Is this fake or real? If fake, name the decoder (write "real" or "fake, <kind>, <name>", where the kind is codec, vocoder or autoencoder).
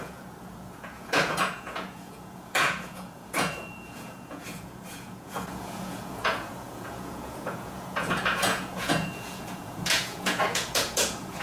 fake, vocoder, Vocos